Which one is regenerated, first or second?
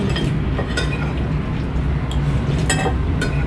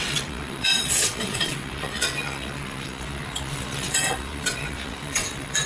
second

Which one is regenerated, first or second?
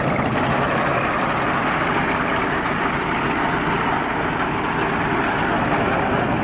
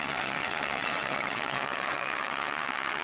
second